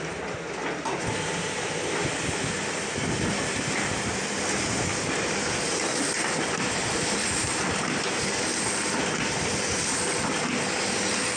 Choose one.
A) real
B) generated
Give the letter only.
A